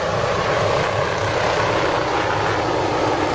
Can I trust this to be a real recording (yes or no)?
yes